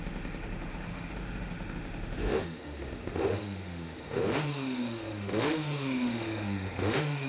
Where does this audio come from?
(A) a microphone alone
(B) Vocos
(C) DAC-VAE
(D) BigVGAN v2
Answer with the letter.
C